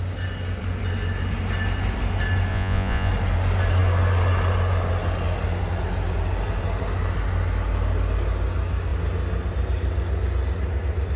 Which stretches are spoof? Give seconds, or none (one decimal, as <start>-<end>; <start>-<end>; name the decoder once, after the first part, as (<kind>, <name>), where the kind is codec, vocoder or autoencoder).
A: 2.5-3.1 (vocoder, Vocos)

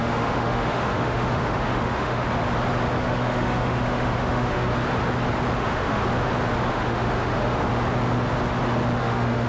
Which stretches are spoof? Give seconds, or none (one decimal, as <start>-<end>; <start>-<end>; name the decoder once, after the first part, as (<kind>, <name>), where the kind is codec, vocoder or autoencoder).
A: 0.0-2.3 (autoencoder, DAC-VAE); 3.0-4.7; 5.6-6.0; 6.7-7.7; 9.0-9.5

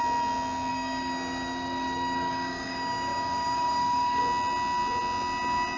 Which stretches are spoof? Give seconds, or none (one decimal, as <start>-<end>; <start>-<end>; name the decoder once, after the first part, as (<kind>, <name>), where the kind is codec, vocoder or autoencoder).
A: 0.7-4.2 (codec, DAC)

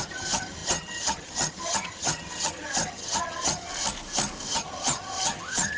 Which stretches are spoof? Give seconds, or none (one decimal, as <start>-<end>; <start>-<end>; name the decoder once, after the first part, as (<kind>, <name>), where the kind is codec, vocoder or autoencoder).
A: 0.0-3.7 (vocoder, HiFi-GAN); 4.5-5.8

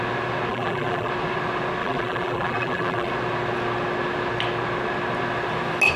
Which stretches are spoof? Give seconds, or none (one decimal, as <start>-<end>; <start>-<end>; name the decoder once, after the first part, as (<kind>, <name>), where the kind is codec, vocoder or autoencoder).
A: 0.5-1.1 (vocoder, BigVGAN v2); 1.8-3.1

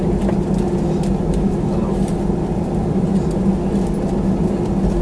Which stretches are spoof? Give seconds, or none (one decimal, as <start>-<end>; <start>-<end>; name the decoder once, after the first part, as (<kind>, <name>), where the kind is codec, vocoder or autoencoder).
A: none

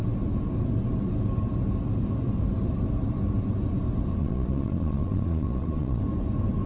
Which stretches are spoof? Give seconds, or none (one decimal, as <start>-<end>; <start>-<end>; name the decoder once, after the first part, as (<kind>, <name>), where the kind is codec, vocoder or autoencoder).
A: 4.2-6.0 (vocoder, Vocos)